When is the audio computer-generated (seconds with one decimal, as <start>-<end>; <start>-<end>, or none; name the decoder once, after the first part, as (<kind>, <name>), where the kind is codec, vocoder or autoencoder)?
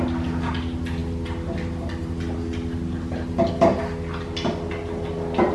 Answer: none